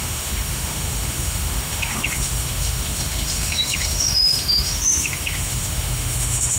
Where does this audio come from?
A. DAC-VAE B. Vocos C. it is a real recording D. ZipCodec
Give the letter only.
A